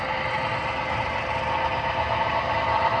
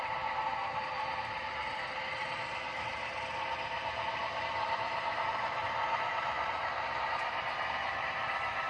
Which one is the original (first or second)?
first